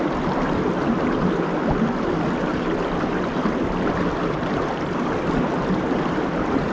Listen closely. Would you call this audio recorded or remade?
recorded